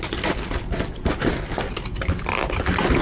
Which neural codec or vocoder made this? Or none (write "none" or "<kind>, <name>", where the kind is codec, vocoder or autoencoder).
vocoder, BigVGAN v2